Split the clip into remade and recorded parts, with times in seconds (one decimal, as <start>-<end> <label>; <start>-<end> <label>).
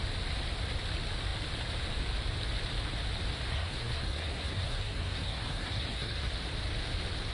0.0-3.5 recorded; 3.5-6.3 remade; 6.3-7.3 recorded